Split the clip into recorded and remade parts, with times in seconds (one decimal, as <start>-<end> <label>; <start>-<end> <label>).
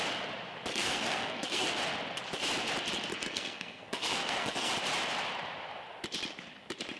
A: 0.0-0.7 recorded; 0.7-1.8 remade; 1.8-3.1 recorded; 3.1-4.7 remade; 4.7-7.0 recorded